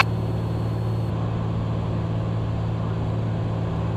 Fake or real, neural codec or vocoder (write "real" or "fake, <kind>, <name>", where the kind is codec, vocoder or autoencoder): real